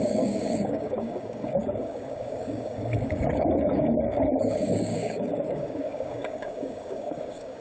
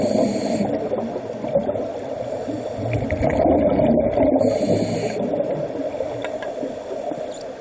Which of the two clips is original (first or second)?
second